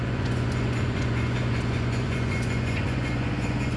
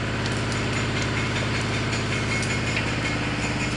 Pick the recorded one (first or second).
second